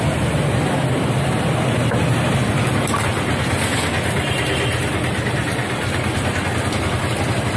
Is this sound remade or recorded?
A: recorded